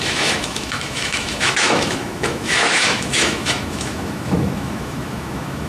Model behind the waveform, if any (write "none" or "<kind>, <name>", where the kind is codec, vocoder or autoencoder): autoencoder, DAC-VAE